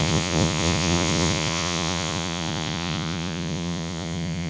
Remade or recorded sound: remade